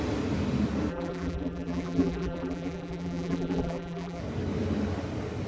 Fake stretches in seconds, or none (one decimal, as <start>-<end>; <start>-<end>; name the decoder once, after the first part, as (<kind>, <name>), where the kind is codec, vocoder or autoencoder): 0.9-4.2 (vocoder, BigVGAN v2)